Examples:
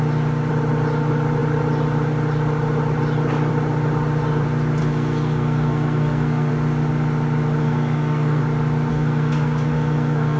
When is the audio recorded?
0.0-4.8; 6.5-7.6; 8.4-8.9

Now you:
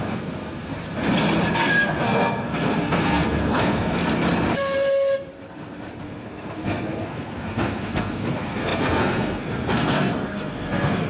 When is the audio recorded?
0.7-1.6; 4.0-6.0

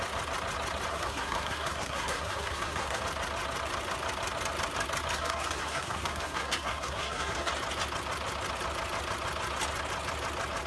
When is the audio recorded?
0.0-0.9; 3.0-5.1; 7.5-10.7

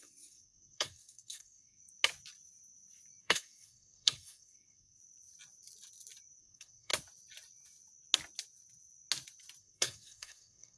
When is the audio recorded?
1.8-3.2; 5.0-6.4; 6.9-9.6

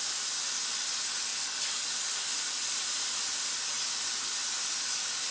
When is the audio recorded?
0.0-5.3

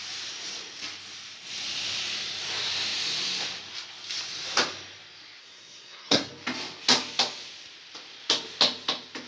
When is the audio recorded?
0.0-5.4; 6.3-9.3